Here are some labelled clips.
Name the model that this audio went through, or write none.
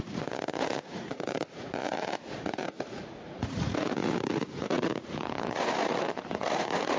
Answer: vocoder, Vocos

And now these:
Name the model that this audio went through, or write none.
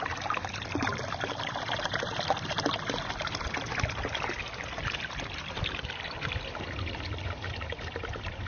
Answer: vocoder, BigVGAN v2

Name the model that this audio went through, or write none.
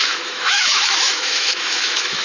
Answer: autoencoder, DAC-VAE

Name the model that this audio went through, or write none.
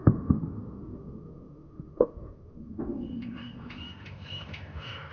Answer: autoencoder, DAC-VAE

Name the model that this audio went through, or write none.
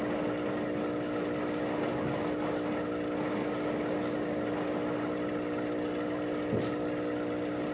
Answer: none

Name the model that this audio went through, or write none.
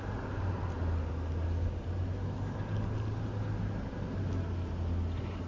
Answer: none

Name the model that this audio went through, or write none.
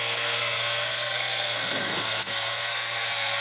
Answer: codec, SNAC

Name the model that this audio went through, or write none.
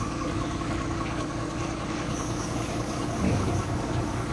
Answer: codec, DAC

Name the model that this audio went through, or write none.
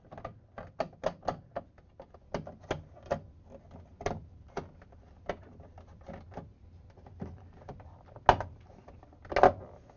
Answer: none